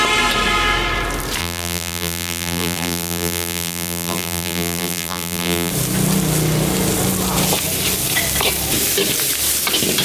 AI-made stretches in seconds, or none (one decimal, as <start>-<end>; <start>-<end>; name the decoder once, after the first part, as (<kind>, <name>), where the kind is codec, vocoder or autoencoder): 1.4-5.7 (vocoder, BigVGAN v2)